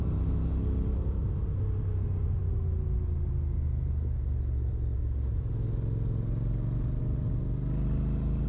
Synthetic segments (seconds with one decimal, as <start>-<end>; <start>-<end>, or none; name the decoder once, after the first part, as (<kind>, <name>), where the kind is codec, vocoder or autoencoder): none